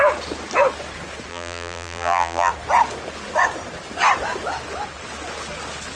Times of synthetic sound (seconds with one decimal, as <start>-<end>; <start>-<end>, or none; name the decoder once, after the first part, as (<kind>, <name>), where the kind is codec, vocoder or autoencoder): 1.3-2.5 (vocoder, BigVGAN v2)